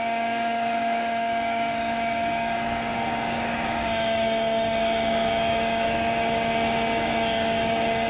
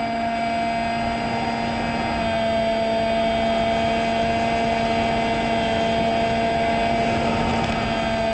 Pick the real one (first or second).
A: second